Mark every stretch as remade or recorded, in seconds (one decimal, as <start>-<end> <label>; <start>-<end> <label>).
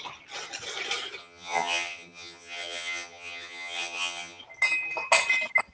0.0-1.2 recorded; 1.2-4.4 remade; 4.4-5.7 recorded